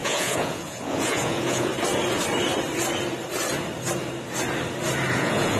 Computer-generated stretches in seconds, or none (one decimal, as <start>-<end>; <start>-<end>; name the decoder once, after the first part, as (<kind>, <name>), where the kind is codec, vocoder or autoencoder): 0.0-1.7 (vocoder, Vocos); 5.1-5.6

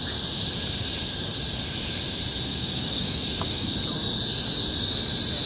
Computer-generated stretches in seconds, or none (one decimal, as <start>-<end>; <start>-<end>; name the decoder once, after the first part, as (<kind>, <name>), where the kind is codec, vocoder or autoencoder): 2.5-3.8 (codec, DAC)

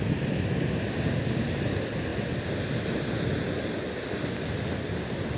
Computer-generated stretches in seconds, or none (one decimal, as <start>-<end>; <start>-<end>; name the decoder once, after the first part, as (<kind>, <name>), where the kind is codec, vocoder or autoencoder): none